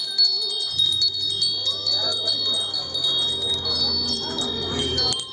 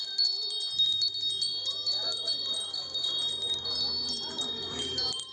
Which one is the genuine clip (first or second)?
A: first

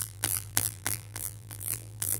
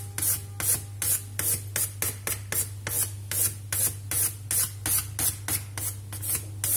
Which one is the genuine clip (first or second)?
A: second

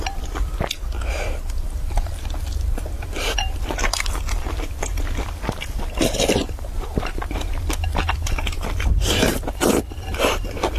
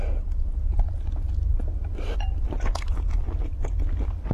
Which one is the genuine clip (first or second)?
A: second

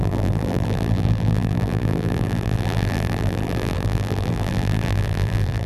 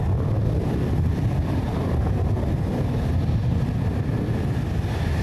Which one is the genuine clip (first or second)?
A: second